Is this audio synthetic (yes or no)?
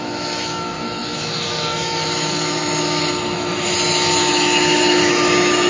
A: yes